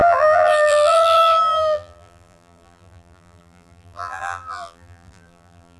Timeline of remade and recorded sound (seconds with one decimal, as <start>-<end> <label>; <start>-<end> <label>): 0.0-5.8 remade